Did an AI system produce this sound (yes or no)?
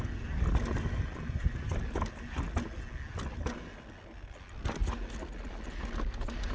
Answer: no